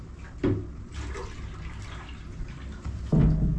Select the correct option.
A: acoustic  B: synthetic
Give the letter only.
A